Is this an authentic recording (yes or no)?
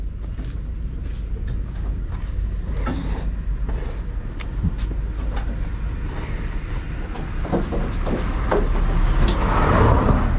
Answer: yes